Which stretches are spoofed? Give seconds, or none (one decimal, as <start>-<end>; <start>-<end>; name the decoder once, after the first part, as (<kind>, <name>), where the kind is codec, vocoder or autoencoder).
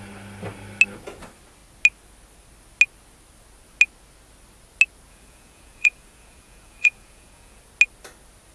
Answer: 5.1-7.6 (vocoder, Vocos)